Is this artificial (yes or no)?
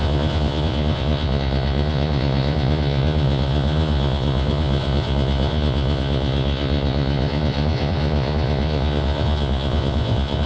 yes